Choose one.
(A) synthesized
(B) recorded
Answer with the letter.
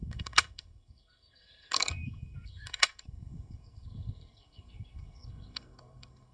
A